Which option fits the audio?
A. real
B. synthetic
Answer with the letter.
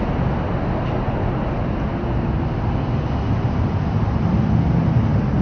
A